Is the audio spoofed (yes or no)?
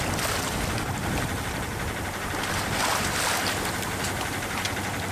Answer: no